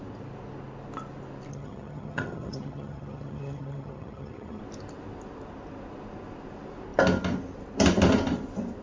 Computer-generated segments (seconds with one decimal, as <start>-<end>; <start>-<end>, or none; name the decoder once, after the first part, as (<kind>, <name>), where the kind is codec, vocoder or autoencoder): 1.5-4.6 (vocoder, HiFi-GAN)